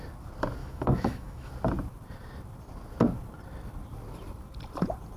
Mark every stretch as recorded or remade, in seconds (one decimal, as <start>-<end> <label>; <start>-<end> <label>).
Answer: 0.0-0.6 recorded; 0.6-1.5 remade; 1.5-5.2 recorded